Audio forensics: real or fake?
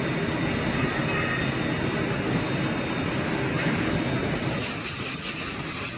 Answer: real